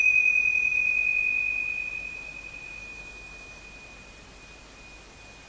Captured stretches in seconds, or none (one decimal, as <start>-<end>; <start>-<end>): 0.0-2.8; 3.6-5.5